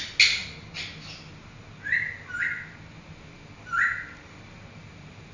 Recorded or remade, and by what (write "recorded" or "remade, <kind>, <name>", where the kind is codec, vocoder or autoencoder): recorded